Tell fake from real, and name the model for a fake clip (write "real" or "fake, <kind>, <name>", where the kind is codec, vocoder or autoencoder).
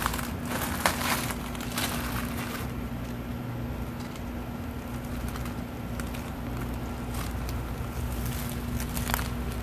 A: real